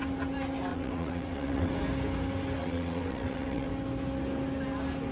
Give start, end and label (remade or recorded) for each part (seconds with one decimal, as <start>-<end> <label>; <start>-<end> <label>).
0.0-0.7 recorded; 0.7-1.7 remade; 1.7-2.6 recorded; 2.6-3.7 remade; 3.7-5.1 recorded

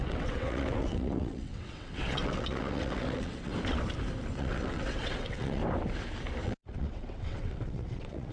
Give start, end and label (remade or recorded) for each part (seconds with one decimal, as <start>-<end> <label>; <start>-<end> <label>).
0.0-3.5 remade; 3.5-4.3 recorded; 4.3-5.6 remade; 5.6-6.4 recorded; 6.4-8.3 remade